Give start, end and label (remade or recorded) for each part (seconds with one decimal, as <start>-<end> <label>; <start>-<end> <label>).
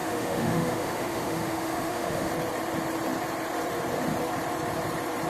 0.0-2.3 remade; 2.3-5.3 recorded